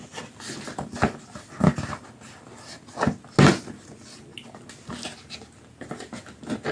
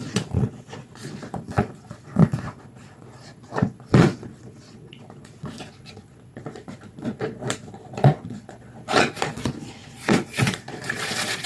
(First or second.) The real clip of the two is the first